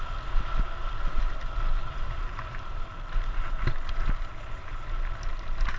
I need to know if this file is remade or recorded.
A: recorded